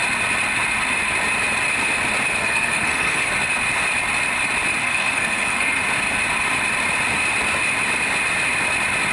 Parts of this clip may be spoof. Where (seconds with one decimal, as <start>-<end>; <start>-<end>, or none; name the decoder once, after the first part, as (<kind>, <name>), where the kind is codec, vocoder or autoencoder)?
2.4-3.3 (codec, SNAC); 4.8-5.8